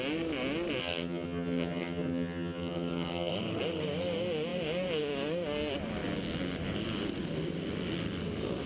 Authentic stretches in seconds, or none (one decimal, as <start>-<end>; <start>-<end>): 0.0-0.8; 3.3-8.7